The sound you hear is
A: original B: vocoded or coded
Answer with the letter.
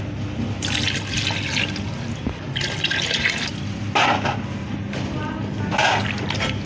A